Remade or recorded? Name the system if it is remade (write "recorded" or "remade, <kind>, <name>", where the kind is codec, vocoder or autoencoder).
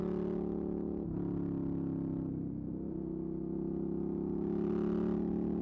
recorded